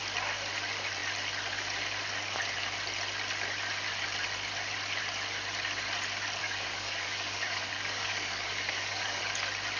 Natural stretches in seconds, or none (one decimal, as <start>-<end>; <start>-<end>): 0.0-6.4; 9.2-9.8